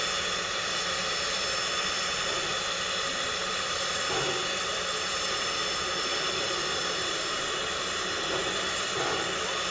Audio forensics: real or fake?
real